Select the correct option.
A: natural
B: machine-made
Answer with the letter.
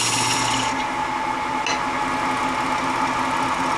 A